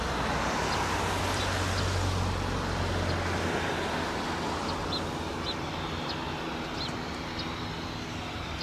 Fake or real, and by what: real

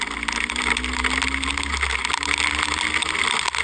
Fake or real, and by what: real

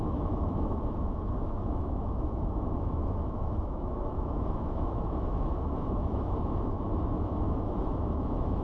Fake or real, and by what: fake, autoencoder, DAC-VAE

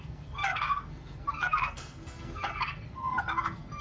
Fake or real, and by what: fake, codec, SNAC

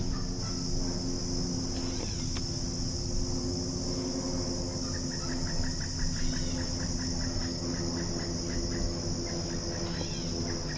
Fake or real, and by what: real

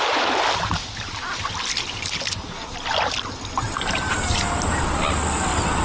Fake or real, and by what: real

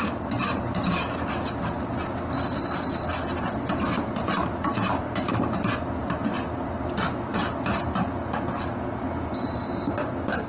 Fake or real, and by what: real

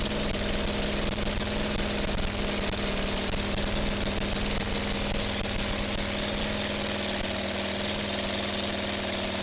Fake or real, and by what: real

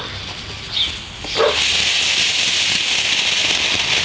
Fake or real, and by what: real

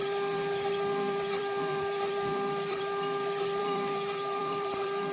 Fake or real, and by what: fake, vocoder, BigVGAN v2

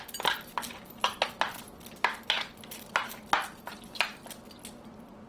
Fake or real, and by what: real